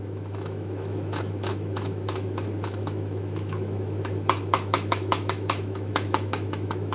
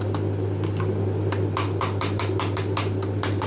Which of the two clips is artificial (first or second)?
first